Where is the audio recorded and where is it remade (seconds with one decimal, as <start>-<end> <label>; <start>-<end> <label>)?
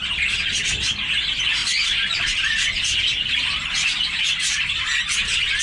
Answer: 0.0-5.6 recorded